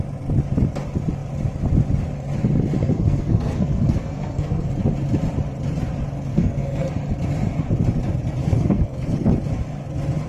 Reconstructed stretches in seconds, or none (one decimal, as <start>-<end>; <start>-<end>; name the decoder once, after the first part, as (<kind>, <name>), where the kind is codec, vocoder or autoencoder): 2.8-4.7 (codec, SNAC); 6.3-6.9; 8.4-9.3